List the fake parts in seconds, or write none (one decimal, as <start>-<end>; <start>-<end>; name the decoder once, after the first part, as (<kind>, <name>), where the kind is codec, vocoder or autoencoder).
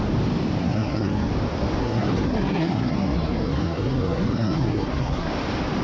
0.6-1.3 (codec, SNAC); 1.8-5.3